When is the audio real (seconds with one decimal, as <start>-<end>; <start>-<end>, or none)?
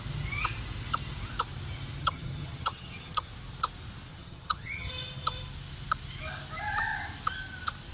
0.0-2.0; 3.3-4.1; 4.9-7.9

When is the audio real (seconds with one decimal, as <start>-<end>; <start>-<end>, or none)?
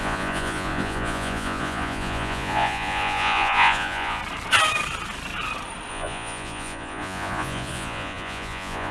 4.2-5.9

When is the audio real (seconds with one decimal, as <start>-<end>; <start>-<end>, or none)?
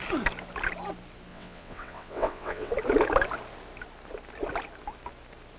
0.0-1.3; 2.7-5.6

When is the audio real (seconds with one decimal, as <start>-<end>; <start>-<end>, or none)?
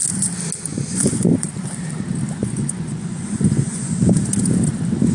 0.0-0.7; 1.4-2.4; 3.9-5.1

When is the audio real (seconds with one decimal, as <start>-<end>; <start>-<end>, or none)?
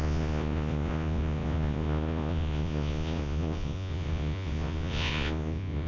none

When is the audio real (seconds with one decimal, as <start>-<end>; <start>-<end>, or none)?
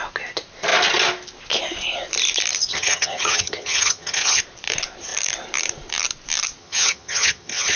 0.0-2.7; 4.4-6.6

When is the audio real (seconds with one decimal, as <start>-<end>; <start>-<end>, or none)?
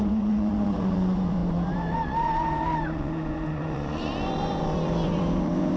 none